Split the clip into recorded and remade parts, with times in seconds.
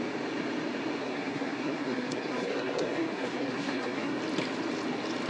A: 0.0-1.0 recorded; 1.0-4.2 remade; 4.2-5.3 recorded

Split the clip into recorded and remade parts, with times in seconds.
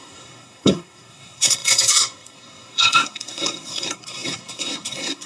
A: 0.0-5.3 remade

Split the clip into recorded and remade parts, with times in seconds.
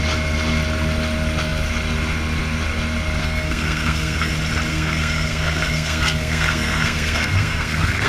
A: 0.0-3.2 recorded; 3.2-4.3 remade; 4.3-4.7 recorded; 4.7-8.1 remade